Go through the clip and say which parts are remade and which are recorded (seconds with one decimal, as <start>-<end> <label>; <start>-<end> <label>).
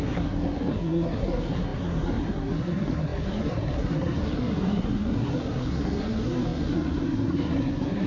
0.0-8.1 remade